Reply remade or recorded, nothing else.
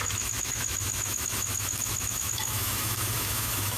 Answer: remade